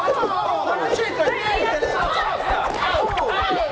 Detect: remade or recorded recorded